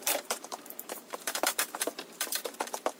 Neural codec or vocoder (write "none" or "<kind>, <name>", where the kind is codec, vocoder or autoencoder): vocoder, BigVGAN v2